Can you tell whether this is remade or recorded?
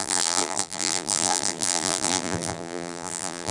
remade